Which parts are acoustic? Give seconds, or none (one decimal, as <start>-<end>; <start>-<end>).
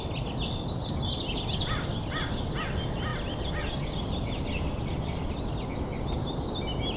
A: none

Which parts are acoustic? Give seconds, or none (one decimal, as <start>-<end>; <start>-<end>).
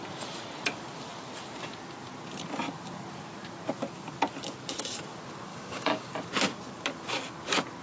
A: 0.0-5.5; 6.1-7.8